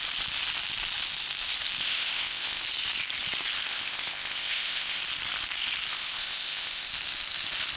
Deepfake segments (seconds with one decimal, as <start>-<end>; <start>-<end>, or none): 1.8-2.6; 3.7-5.0; 5.9-6.9